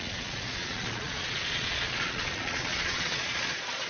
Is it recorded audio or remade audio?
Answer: remade